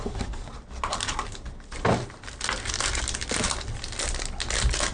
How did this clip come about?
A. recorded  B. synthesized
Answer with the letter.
A